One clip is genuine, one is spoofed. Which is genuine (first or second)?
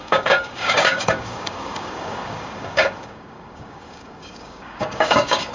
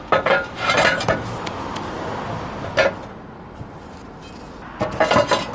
second